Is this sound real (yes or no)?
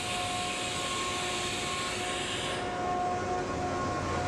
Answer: yes